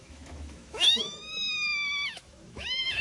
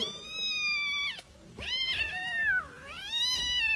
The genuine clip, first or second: second